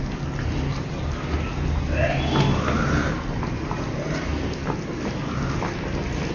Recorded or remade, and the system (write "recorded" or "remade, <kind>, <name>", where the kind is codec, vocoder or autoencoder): recorded